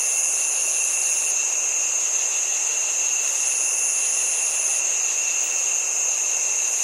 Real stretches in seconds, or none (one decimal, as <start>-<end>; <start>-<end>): 0.0-6.8